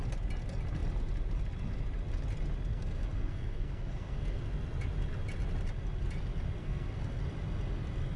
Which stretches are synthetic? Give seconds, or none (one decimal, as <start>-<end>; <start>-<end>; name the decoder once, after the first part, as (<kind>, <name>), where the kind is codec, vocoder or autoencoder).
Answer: 2.7-4.4 (codec, SNAC); 6.6-7.2